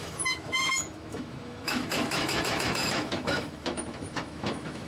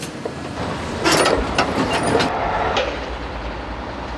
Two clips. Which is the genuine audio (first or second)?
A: second